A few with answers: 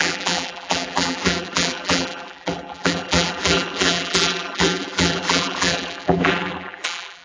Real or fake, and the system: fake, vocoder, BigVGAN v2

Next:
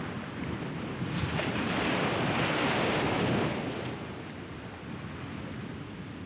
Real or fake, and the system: real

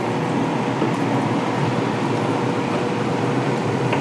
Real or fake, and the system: fake, vocoder, BigVGAN v2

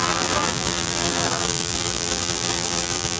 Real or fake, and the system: fake, vocoder, BigVGAN v2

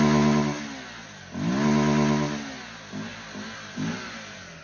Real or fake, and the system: real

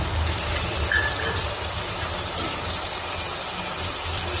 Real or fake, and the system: real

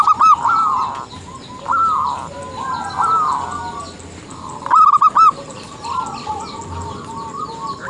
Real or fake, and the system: real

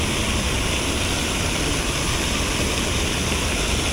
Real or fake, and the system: real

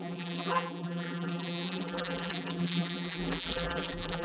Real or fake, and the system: fake, vocoder, BigVGAN v2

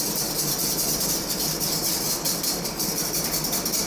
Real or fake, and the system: fake, vocoder, BigVGAN v2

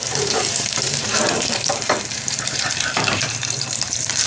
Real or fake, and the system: fake, vocoder, BigVGAN v2